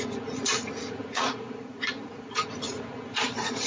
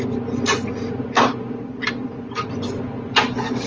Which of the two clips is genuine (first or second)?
second